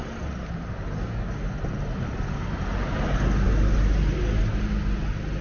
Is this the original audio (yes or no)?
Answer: yes